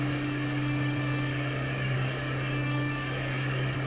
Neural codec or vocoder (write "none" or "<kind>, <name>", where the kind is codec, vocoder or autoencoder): codec, DAC